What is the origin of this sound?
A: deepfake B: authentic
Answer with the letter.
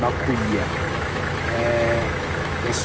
A